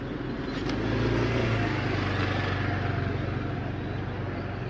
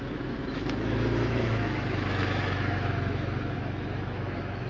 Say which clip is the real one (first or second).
first